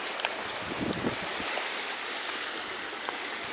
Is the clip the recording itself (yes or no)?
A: yes